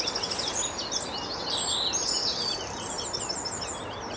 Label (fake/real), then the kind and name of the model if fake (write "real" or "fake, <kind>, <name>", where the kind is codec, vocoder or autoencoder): real